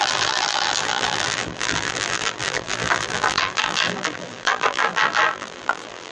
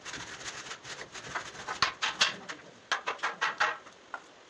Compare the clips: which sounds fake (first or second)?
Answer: first